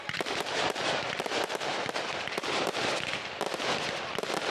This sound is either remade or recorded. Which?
recorded